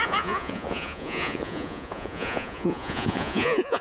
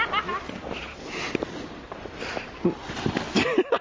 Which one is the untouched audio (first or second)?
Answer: second